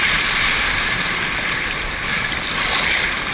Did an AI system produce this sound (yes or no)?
yes